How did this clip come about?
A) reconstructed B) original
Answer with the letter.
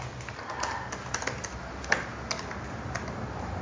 B